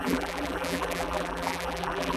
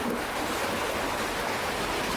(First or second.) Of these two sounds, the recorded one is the second